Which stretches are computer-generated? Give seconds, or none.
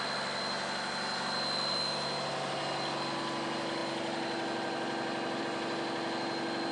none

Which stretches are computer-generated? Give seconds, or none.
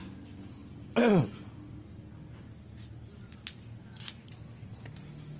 none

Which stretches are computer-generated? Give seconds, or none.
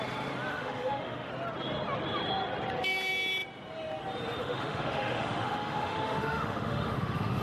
0.5-1.3 (autoencoder, DAC-VAE); 4.4-7.4